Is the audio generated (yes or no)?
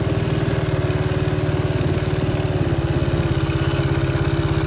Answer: no